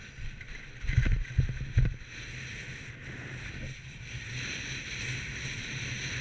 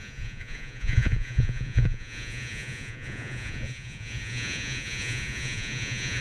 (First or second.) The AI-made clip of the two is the second